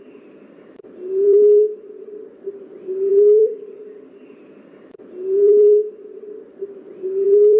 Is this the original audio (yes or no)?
no